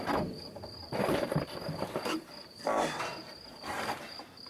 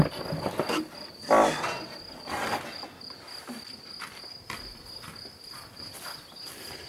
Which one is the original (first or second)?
second